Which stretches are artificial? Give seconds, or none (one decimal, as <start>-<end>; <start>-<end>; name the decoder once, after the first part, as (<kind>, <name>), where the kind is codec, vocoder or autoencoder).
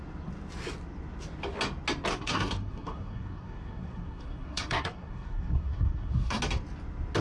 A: 2.1-6.4 (codec, SNAC)